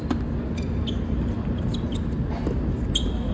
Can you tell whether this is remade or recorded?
recorded